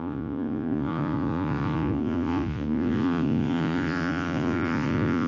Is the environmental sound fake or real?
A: fake